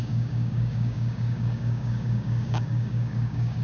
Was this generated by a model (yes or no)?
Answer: yes